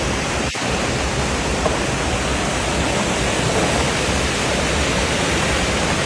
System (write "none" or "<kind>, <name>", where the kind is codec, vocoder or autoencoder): vocoder, BigVGAN v2